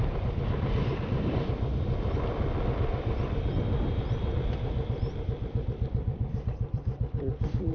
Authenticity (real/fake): fake